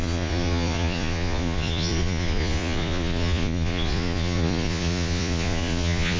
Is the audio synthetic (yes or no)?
yes